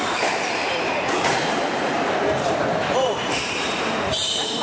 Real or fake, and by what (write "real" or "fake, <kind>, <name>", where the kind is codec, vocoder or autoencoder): fake, vocoder, BigVGAN v2